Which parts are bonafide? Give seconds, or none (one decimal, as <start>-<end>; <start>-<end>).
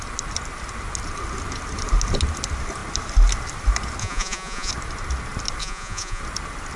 0.0-4.0; 4.7-5.6; 6.2-6.8